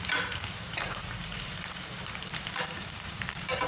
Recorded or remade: remade